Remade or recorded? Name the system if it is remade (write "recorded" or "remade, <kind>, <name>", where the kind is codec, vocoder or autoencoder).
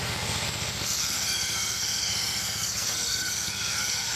remade, codec, SNAC